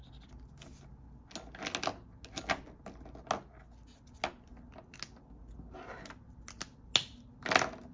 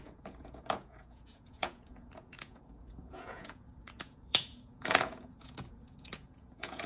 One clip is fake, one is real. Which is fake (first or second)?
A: second